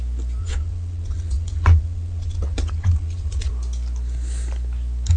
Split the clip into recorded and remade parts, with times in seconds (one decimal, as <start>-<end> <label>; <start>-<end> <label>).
0.0-0.4 recorded; 0.4-3.5 remade; 3.5-5.2 recorded